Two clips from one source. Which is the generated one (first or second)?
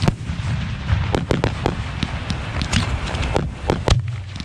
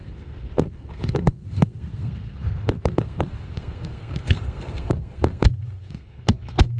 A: second